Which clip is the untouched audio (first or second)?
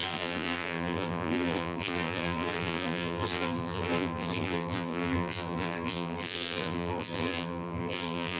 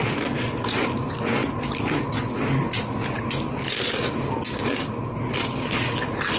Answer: second